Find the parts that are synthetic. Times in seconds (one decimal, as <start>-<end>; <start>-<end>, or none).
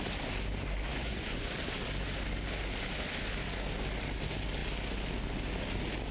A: 0.9-1.5